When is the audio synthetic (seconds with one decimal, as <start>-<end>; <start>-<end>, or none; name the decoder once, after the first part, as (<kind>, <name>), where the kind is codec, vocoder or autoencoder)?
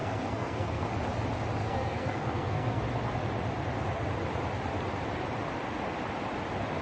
0.0-0.9 (codec, SNAC); 1.6-2.8